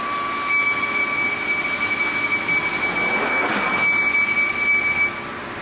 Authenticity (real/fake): real